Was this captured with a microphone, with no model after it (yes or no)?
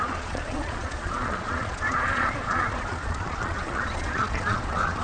no